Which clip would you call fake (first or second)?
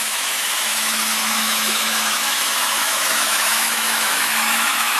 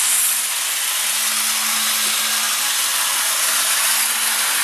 first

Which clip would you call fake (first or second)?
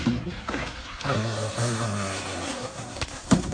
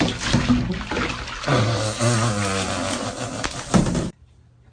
first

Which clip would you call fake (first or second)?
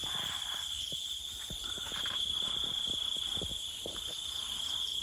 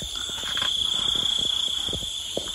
first